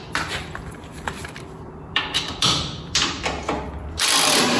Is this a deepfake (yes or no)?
yes